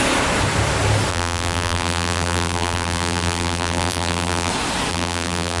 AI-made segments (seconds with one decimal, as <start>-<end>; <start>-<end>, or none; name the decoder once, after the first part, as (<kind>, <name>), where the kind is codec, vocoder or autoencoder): 1.1-4.5 (vocoder, BigVGAN v2); 4.9-5.6